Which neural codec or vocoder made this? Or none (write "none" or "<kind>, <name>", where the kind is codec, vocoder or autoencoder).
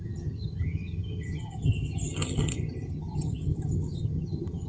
vocoder, HiFi-GAN